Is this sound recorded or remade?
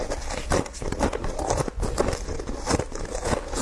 recorded